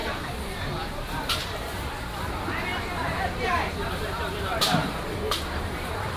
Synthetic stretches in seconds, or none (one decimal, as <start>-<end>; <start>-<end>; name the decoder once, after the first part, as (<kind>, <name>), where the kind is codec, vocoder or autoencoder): 0.0-6.2 (vocoder, BigVGAN v2)